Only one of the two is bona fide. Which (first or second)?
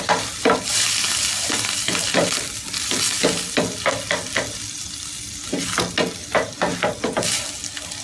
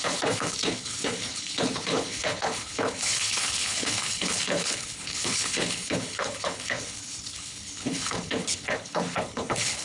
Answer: first